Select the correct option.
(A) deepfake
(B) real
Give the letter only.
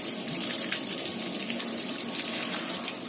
B